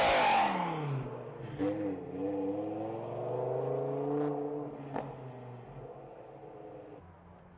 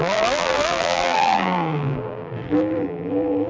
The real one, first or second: first